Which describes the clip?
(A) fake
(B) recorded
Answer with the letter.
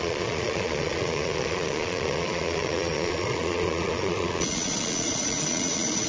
A